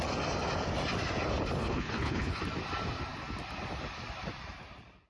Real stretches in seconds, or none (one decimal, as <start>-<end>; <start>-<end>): 0.0-1.6; 2.4-5.1